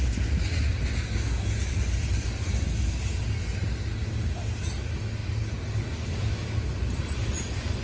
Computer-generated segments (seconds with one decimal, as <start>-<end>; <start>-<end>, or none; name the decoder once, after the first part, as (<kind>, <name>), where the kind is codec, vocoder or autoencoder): 1.6-3.2 (vocoder, BigVGAN v2); 5.2-7.8